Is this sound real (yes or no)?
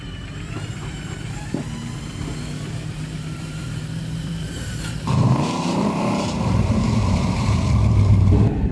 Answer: no